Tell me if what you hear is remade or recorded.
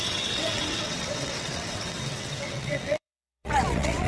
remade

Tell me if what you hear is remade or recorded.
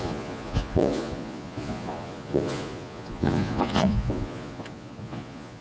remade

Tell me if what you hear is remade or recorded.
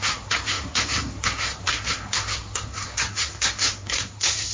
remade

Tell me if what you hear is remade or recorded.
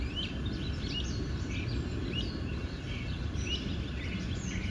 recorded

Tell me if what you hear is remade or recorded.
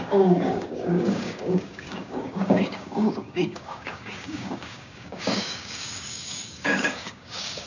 remade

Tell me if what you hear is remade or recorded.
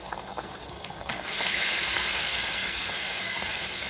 remade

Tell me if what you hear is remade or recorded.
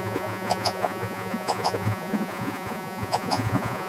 remade